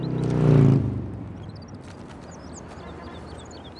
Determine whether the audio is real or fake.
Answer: real